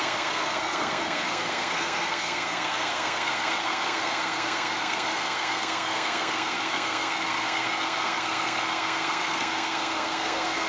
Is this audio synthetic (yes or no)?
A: yes